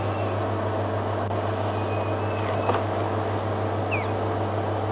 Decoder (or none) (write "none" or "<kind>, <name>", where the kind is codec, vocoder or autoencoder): none